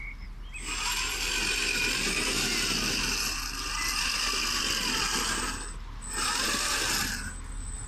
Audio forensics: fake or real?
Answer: real